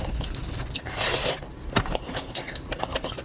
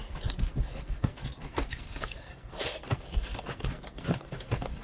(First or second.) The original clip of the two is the first